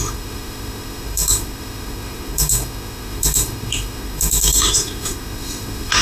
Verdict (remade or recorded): remade